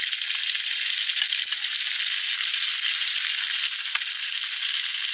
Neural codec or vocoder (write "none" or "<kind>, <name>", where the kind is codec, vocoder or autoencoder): none